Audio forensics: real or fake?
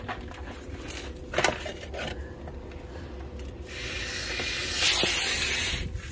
real